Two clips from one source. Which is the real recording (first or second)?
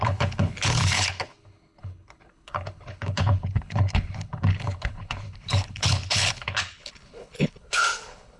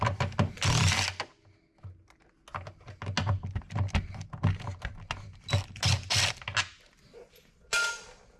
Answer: second